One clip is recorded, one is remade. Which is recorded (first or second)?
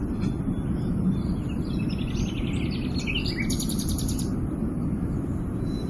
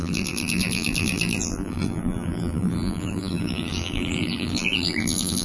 first